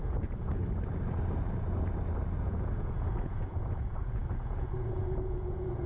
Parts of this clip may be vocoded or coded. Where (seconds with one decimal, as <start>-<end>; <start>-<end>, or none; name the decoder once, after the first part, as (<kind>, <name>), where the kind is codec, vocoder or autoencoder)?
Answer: 0.0-0.6 (vocoder, Vocos); 2.4-5.9

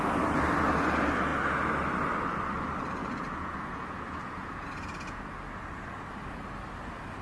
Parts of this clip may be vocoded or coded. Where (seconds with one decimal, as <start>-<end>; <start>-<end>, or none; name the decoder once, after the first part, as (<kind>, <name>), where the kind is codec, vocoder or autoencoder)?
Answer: 3.0-5.3 (vocoder, Vocos)